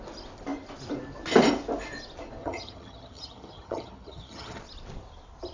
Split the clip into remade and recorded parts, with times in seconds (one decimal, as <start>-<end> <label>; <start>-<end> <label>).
0.0-2.4 recorded; 2.4-4.6 remade; 4.6-5.5 recorded